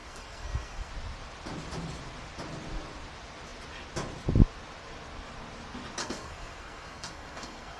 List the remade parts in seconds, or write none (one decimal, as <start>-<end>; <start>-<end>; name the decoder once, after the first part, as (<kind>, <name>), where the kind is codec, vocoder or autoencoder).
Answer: 0.0-0.9 (codec, SNAC); 6.0-7.8